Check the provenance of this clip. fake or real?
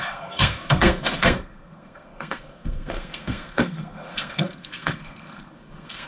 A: fake